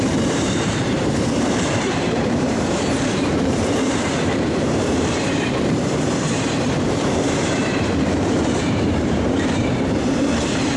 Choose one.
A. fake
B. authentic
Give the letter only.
A